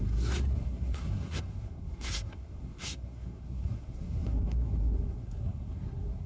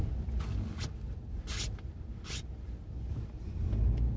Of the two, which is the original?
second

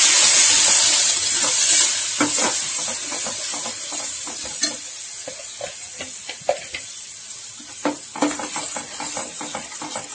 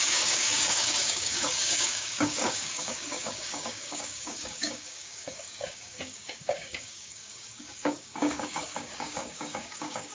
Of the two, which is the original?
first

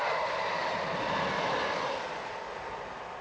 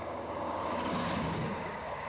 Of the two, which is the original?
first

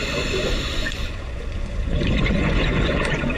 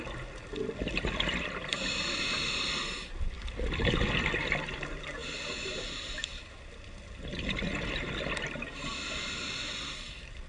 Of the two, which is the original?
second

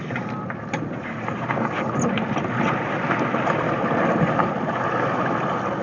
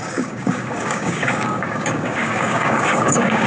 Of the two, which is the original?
first